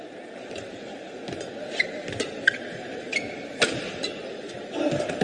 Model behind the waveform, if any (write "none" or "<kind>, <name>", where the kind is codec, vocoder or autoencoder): none